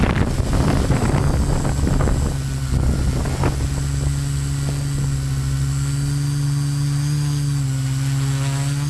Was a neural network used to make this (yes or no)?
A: no